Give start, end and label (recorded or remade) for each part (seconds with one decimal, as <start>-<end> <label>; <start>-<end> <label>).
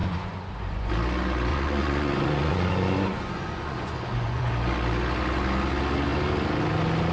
0.0-0.9 remade; 0.9-1.5 recorded; 1.5-4.5 remade; 4.5-7.1 recorded